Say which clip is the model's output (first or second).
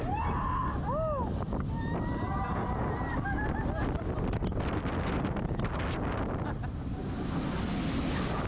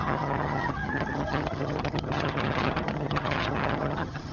second